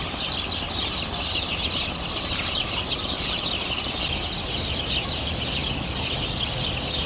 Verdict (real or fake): real